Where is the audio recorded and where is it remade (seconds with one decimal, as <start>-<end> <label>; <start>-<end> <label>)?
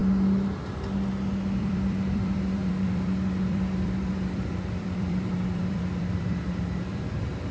0.0-1.6 recorded; 1.6-7.5 remade